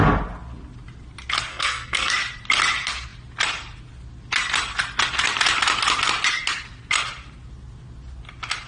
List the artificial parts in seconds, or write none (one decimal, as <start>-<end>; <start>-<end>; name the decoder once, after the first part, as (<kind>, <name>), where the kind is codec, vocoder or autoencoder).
1.5-2.1 (codec, SNAC)